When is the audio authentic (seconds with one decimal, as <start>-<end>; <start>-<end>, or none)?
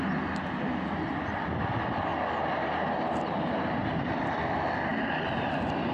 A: 0.0-2.1; 4.1-5.9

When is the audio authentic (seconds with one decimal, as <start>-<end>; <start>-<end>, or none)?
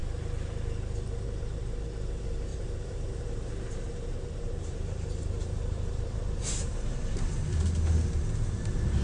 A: 0.0-2.5; 7.0-9.0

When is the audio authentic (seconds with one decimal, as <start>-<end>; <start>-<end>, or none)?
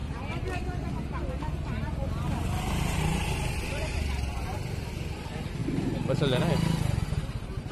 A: 0.0-5.6; 6.4-7.7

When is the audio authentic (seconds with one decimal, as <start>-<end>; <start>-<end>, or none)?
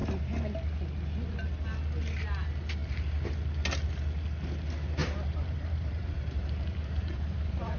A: 0.0-5.0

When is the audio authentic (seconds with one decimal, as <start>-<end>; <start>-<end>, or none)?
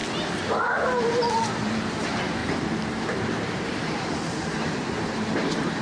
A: 0.0-1.0; 2.4-3.0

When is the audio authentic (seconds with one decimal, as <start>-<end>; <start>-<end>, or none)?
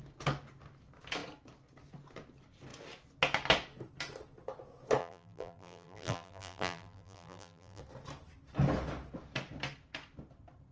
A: 0.0-5.0; 7.8-10.7